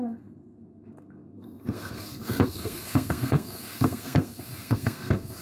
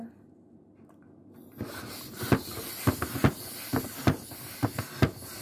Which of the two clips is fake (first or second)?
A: first